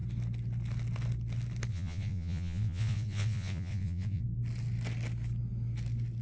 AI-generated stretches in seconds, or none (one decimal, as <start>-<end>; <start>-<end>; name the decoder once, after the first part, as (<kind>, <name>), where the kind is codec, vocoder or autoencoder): 1.7-4.2 (vocoder, Vocos)